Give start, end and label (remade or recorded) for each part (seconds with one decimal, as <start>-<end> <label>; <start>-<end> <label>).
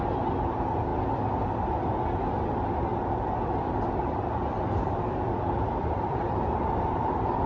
0.0-2.9 recorded; 2.9-7.5 remade